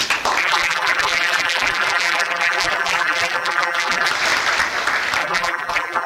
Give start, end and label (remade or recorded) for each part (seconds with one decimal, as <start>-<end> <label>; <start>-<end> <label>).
0.0-0.4 recorded; 0.4-4.1 remade; 4.1-5.2 recorded; 5.2-6.1 remade